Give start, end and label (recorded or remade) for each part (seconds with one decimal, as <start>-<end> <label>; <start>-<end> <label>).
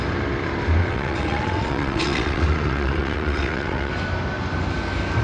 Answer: 0.0-0.8 recorded; 0.8-3.9 remade; 3.9-5.2 recorded